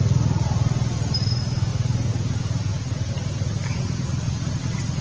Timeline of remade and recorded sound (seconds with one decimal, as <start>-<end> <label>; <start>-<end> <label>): 0.0-5.0 recorded

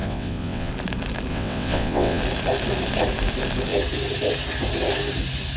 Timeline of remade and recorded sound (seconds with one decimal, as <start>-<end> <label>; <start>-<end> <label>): 0.0-0.7 remade; 0.7-1.3 recorded; 1.3-2.2 remade; 2.2-5.6 recorded

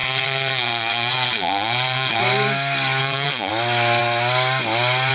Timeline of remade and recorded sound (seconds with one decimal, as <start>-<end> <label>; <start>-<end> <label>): 0.0-2.2 remade; 2.2-3.0 recorded; 3.0-3.5 remade; 3.5-5.1 recorded

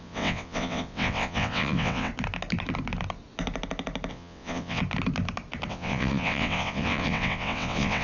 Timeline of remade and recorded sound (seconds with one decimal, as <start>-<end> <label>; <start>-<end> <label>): 0.0-2.1 remade; 2.1-4.1 recorded; 4.1-4.8 remade; 4.8-5.7 recorded; 5.7-8.0 remade

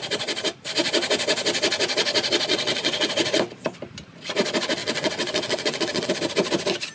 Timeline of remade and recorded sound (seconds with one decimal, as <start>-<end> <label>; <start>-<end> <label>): 0.0-2.5 recorded; 2.5-3.1 remade; 3.1-4.8 recorded; 4.8-6.1 remade; 6.1-6.9 recorded